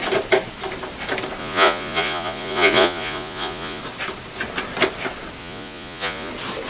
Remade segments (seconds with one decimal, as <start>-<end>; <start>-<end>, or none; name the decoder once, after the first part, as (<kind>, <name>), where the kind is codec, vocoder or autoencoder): 1.4-3.8 (vocoder, Vocos); 5.4-6.3